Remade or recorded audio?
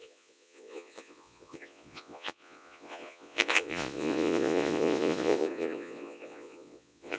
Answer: remade